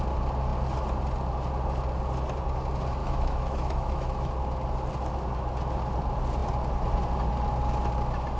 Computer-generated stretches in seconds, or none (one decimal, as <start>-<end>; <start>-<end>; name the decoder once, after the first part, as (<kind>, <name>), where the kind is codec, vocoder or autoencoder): 3.0-4.3 (autoencoder, DAC-VAE)